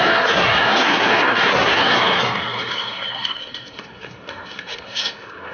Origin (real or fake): fake